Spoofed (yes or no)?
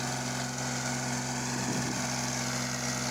no